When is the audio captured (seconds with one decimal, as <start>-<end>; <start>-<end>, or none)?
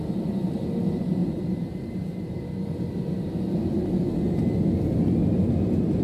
0.0-1.2; 3.3-6.0